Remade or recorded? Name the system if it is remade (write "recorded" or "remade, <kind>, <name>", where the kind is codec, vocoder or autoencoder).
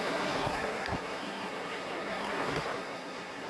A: remade, codec, SNAC